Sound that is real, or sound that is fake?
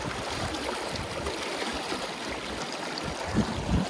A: real